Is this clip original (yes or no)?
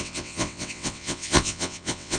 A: no